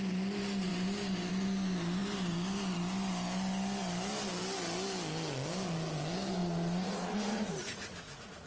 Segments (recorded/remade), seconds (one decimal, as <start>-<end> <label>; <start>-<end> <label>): 0.0-6.4 recorded; 6.4-8.5 remade